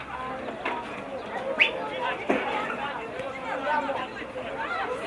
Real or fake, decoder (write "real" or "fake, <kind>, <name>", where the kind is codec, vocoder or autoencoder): real